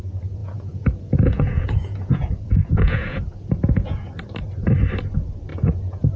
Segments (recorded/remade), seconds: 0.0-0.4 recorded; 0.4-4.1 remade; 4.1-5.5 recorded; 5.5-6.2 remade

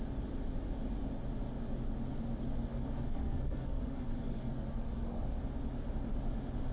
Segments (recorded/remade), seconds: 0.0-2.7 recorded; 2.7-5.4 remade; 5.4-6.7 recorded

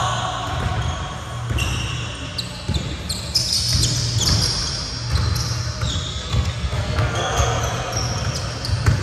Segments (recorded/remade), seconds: 0.0-6.1 recorded; 6.1-7.6 remade; 7.6-9.0 recorded

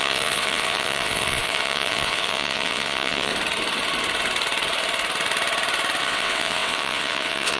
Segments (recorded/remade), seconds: 0.0-3.3 remade; 3.3-6.0 recorded; 6.0-7.6 remade

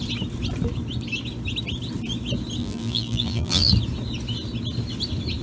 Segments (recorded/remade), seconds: 0.0-2.6 recorded; 2.6-3.7 remade; 3.7-5.4 recorded

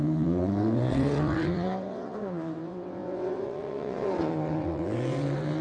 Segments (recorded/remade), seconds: 0.0-5.6 remade

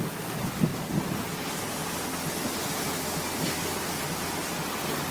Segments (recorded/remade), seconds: 0.0-5.1 recorded